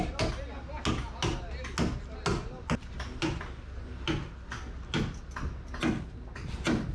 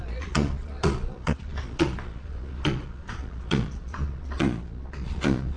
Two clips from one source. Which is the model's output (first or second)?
second